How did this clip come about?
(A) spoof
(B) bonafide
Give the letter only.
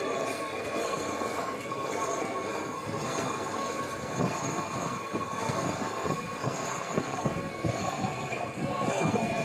A